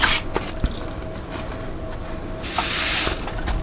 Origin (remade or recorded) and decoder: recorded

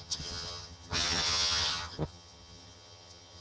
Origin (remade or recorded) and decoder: remade, vocoder, HiFi-GAN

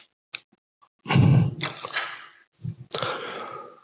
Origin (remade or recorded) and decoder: recorded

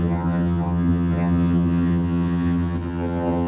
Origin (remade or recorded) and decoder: remade, vocoder, HiFi-GAN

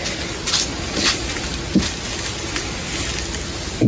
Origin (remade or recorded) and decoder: recorded